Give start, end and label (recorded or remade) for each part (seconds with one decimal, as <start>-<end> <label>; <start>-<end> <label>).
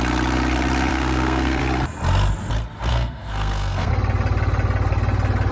0.0-0.9 recorded; 0.9-1.6 remade; 1.6-2.9 recorded; 2.9-3.9 remade; 3.9-5.5 recorded